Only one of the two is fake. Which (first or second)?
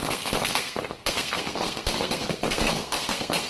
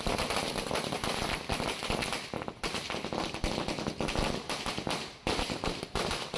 first